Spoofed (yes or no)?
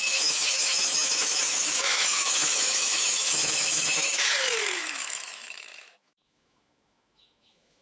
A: yes